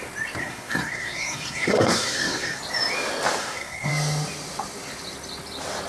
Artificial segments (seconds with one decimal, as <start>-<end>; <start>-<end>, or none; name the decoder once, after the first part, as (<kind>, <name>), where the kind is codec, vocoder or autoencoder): 0.4-2.6 (codec, SNAC); 3.4-3.9